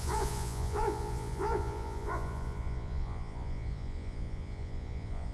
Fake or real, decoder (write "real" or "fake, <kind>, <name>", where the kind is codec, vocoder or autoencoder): fake, vocoder, Vocos